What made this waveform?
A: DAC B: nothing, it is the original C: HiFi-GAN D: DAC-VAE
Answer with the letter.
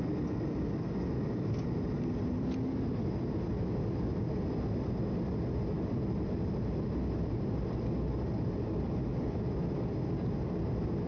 B